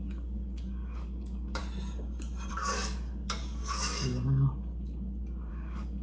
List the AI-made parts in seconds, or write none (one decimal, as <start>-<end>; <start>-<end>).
0.0-1.6; 2.5-4.1; 5.5-6.0